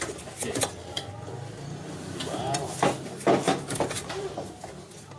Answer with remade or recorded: recorded